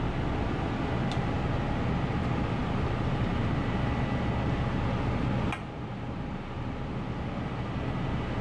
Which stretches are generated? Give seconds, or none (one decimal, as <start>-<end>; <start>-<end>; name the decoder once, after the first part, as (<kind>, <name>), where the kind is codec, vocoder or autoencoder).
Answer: none